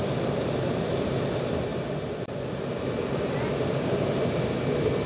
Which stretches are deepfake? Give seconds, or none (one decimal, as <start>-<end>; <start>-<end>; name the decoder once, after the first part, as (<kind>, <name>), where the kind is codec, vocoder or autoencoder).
none